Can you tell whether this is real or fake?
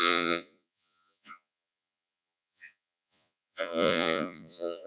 fake